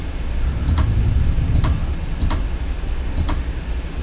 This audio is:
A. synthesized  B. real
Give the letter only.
B